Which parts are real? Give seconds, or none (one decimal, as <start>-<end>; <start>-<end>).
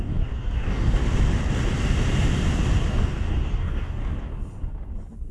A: 1.0-2.9; 4.0-5.3